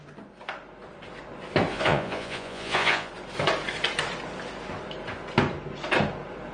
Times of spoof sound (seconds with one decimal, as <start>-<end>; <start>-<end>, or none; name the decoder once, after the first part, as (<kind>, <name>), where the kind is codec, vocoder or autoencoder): 1.7-3.1 (vocoder, Vocos)